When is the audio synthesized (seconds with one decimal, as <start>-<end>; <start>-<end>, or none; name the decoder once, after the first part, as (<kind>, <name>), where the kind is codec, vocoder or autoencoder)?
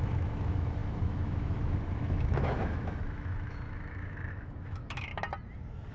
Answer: 0.0-5.1 (autoencoder, DAC-VAE)